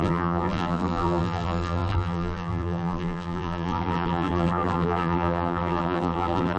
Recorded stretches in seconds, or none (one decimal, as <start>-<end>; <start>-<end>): none

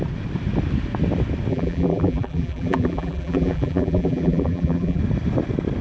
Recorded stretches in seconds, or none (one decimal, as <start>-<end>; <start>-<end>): 0.0-1.5; 5.0-5.8

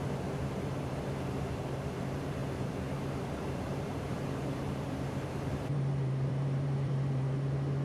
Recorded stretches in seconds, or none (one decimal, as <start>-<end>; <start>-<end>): none

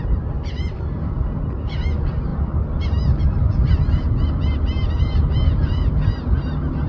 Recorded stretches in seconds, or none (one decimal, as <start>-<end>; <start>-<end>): 0.0-6.9

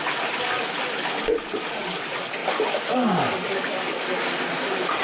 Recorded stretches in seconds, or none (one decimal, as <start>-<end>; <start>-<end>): 0.0-5.0

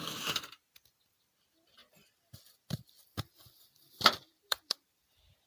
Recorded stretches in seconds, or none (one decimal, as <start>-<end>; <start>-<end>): 0.0-1.8; 5.1-5.5